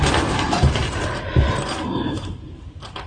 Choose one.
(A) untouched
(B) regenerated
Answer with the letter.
B